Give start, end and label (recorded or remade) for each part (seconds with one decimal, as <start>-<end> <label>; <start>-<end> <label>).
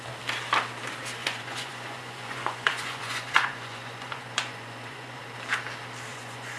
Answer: 0.0-1.2 recorded; 1.2-5.2 remade; 5.2-6.1 recorded; 6.1-6.6 remade